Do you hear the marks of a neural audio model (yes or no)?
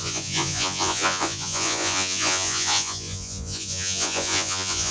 yes